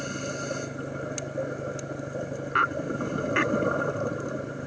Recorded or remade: recorded